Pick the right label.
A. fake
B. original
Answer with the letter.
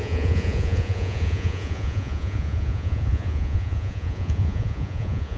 A